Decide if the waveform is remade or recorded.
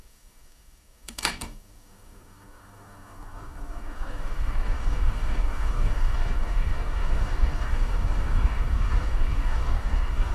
remade